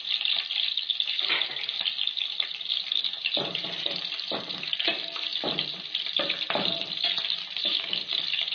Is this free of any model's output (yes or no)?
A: no